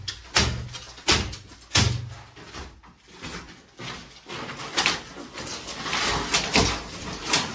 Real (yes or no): yes